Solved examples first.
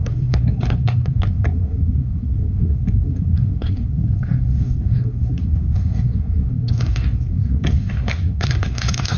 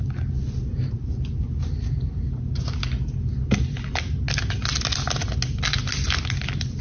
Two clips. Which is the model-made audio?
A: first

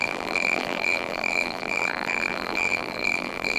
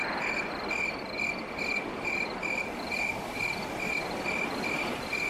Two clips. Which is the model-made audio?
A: first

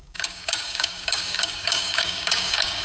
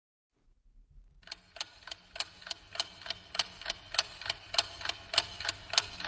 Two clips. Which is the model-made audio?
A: first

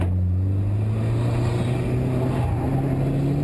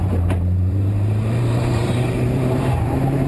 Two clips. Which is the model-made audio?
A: second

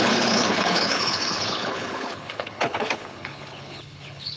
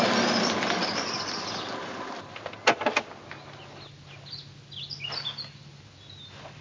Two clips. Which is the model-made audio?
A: first